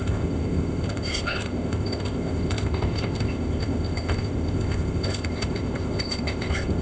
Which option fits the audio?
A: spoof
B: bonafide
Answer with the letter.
A